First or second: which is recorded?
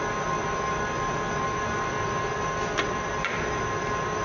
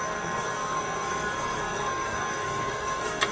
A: first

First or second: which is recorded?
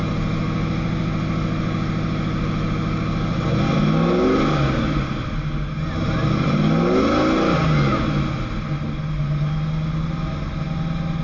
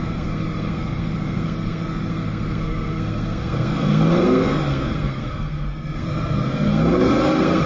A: first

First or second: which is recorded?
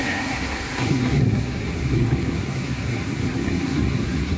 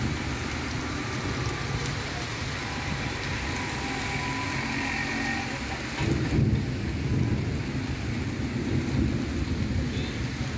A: second